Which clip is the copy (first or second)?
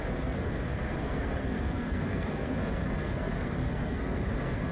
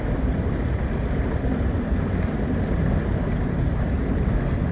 first